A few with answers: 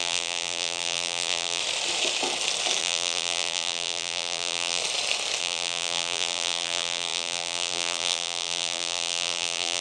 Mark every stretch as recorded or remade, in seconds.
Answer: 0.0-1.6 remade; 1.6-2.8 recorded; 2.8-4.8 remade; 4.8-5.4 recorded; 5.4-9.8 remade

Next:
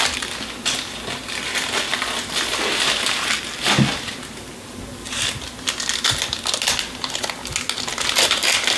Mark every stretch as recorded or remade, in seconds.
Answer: 0.0-8.8 recorded

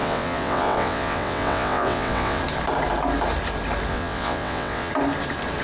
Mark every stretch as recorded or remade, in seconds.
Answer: 0.0-2.4 remade; 2.4-3.9 recorded; 3.9-4.9 remade; 4.9-5.6 recorded

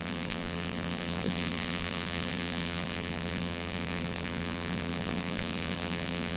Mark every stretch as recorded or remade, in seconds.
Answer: 0.0-6.4 remade